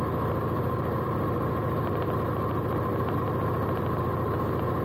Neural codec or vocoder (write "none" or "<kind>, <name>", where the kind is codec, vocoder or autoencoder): none